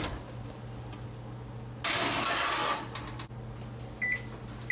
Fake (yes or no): no